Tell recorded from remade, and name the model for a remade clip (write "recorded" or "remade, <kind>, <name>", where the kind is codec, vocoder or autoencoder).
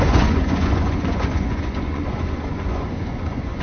remade, vocoder, Vocos